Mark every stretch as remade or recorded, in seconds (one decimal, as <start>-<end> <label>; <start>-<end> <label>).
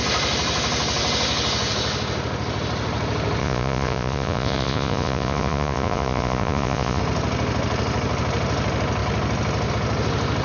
0.0-3.4 recorded; 3.4-7.0 remade; 7.0-10.4 recorded